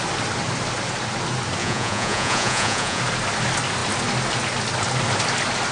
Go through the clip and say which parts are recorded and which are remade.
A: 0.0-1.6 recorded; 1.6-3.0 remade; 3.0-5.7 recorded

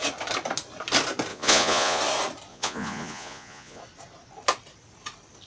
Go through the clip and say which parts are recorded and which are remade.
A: 0.0-1.3 recorded; 1.3-2.0 remade; 2.0-2.5 recorded; 2.5-3.8 remade; 3.8-5.5 recorded

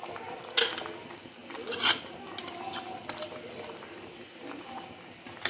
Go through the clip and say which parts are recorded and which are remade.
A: 0.0-5.5 recorded

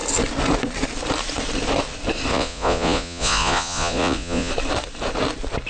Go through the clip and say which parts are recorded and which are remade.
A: 0.0-2.3 recorded; 2.3-4.5 remade; 4.5-5.7 recorded

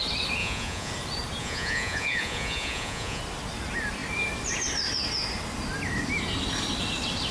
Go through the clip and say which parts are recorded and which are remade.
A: 0.0-0.4 recorded; 0.4-0.9 remade; 0.9-1.4 recorded; 1.4-3.2 remade; 3.2-7.3 recorded

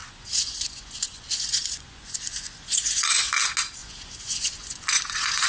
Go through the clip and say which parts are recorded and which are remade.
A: 0.0-3.3 remade; 3.3-3.8 recorded; 3.8-5.5 remade

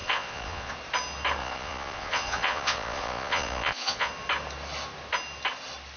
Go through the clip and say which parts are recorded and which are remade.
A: 0.0-0.7 remade; 0.7-1.4 recorded; 1.4-4.1 remade; 4.1-6.0 recorded

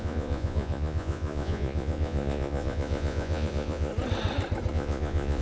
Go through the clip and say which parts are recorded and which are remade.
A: 0.0-3.9 remade; 3.9-4.7 recorded; 4.7-5.4 remade